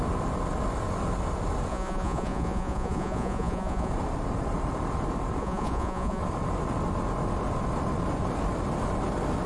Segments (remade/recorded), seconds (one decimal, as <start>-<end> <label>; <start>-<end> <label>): 0.0-1.7 recorded; 1.7-3.9 remade; 3.9-5.4 recorded; 5.4-6.2 remade; 6.2-9.5 recorded